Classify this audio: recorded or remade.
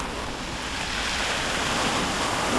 recorded